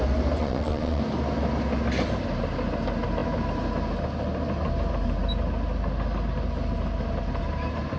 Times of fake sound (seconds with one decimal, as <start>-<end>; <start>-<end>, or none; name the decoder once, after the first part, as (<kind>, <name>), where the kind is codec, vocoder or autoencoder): 0.4-1.0 (vocoder, Vocos)